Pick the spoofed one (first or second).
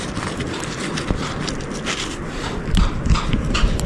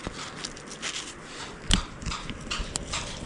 first